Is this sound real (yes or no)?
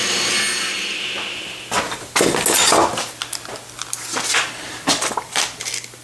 yes